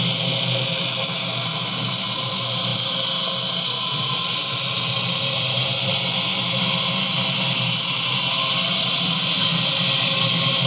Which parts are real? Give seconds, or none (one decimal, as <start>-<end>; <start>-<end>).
0.0-10.7

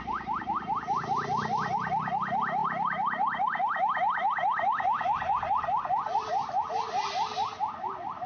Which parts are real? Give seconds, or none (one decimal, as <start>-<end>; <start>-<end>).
0.0-8.3

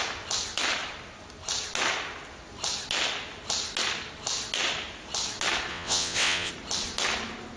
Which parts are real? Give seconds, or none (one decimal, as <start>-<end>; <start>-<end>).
0.0-5.7; 6.5-7.6

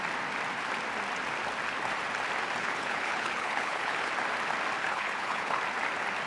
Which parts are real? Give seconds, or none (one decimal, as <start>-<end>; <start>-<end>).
0.0-2.6; 4.1-4.8; 5.6-6.3